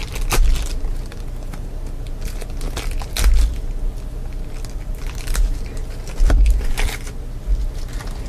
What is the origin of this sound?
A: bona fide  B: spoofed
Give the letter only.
A